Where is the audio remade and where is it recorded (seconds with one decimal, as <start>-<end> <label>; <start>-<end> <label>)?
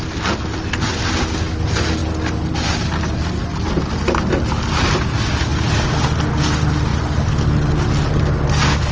0.0-8.9 recorded